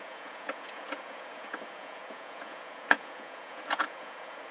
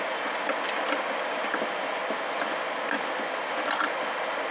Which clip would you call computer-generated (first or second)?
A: first